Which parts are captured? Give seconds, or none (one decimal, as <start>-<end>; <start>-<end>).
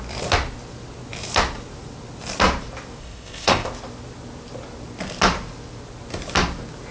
0.0-3.0; 3.7-6.9